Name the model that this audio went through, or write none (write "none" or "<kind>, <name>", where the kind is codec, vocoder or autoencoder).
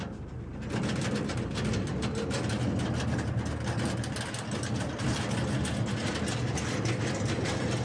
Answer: none